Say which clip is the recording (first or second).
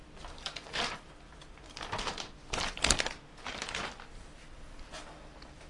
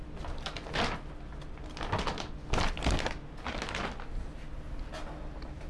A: second